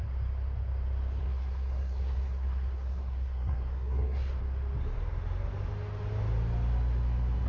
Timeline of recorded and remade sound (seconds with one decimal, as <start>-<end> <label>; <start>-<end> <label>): 0.0-1.2 recorded; 1.2-4.4 remade; 4.4-7.5 recorded